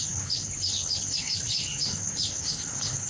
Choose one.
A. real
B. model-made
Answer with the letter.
B